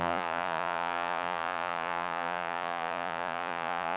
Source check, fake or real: fake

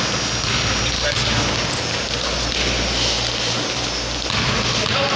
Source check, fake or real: real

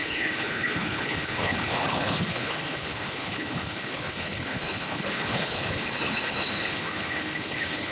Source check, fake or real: fake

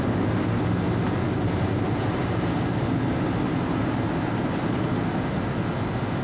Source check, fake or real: real